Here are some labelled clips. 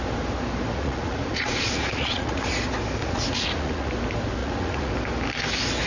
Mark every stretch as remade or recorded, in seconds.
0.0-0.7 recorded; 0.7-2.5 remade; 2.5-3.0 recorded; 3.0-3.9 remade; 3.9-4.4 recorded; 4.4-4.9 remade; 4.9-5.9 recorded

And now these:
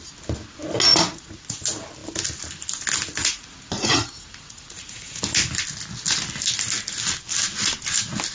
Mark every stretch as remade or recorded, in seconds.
0.0-0.9 recorded; 0.9-1.6 remade; 1.6-3.2 recorded; 3.2-5.2 remade; 5.2-8.3 recorded

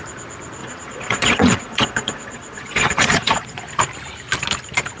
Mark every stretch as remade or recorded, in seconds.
0.0-0.6 recorded; 0.6-3.6 remade; 3.6-5.0 recorded